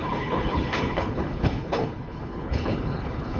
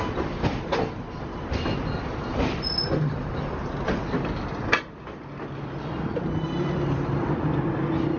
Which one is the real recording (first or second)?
second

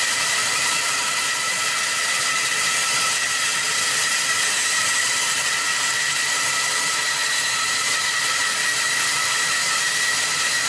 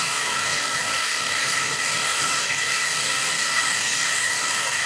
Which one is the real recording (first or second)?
first